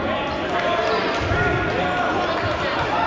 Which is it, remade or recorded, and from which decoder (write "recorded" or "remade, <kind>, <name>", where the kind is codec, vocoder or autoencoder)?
recorded